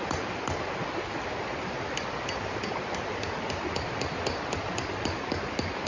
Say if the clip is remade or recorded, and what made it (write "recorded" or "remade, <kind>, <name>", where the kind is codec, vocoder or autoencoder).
recorded